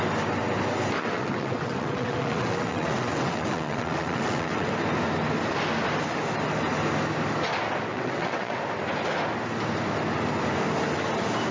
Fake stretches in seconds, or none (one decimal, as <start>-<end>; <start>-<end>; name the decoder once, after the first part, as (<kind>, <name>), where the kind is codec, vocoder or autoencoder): 1.0-4.7 (vocoder, WaveNeXt); 7.9-8.6